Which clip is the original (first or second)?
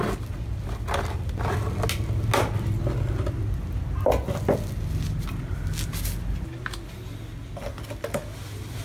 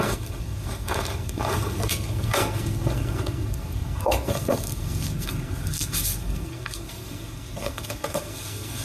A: first